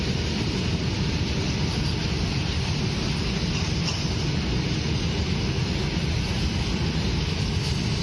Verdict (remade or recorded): recorded